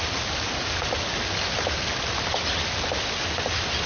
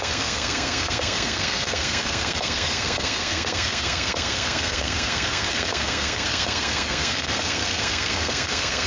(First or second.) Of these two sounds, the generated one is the second